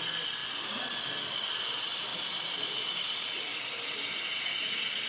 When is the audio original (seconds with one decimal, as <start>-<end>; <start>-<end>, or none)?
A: 0.4-1.5; 3.5-4.6